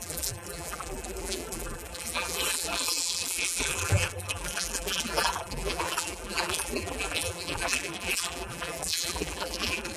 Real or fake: fake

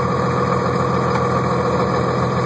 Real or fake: real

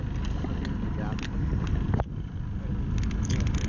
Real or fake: real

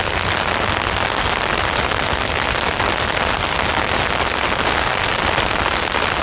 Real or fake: real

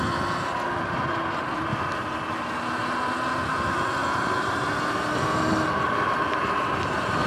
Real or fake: real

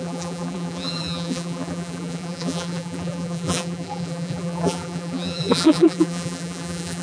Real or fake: fake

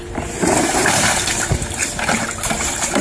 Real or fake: fake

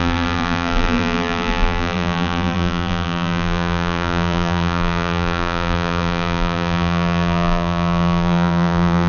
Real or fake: fake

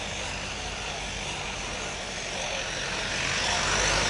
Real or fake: real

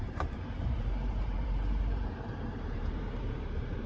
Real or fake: fake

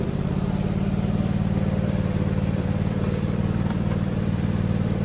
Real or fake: fake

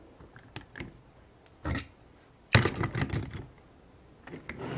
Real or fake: real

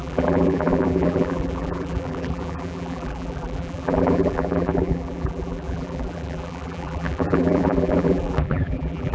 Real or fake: fake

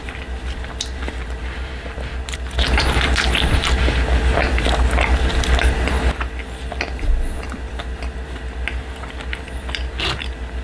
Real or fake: real